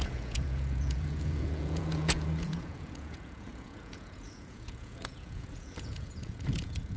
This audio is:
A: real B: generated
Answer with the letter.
B